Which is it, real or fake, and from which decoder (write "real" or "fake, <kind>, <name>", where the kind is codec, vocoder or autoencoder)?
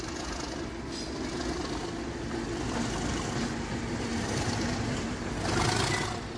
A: real